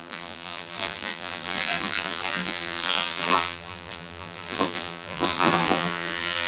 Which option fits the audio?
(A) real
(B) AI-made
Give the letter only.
B